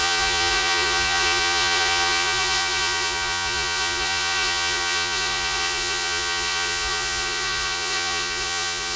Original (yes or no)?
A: no